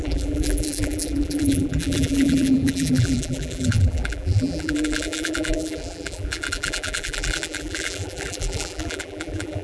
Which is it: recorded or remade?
remade